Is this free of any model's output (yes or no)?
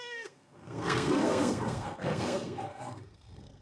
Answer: no